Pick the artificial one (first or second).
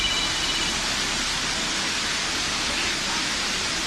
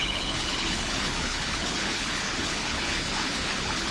second